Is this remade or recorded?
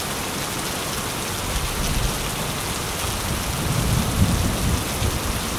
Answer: recorded